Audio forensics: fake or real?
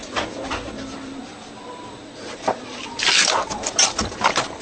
real